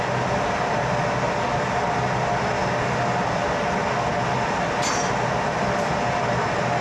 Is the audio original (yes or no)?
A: yes